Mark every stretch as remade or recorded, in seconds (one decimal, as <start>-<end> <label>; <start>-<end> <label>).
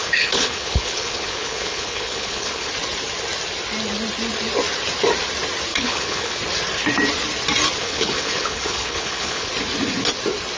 0.0-2.7 remade; 2.7-5.7 recorded; 5.7-6.4 remade; 6.4-7.8 recorded; 7.8-9.5 remade; 9.5-10.6 recorded